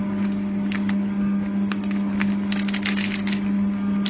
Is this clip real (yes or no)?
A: yes